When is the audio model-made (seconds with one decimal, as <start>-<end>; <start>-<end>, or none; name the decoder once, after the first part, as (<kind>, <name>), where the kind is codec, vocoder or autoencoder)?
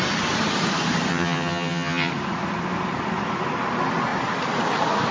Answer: 1.1-2.1 (vocoder, HiFi-GAN)